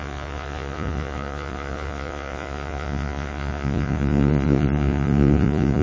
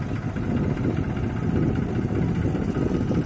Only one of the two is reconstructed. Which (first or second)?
first